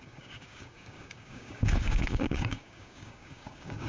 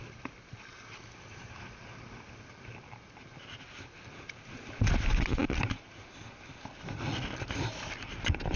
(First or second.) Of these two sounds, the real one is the second